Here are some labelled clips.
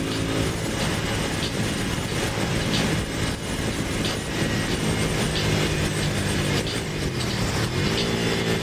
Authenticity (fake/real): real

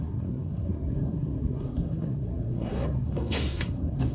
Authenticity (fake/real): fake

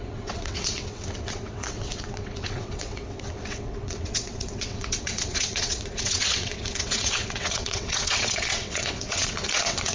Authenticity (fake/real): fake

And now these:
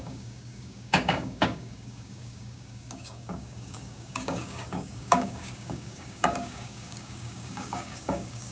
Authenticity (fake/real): fake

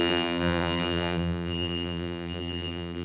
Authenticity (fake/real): fake